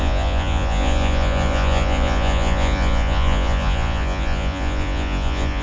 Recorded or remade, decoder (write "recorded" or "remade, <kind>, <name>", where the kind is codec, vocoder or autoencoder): remade, vocoder, Vocos